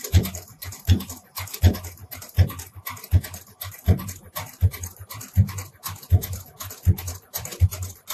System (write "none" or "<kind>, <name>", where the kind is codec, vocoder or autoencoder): vocoder, BigVGAN v2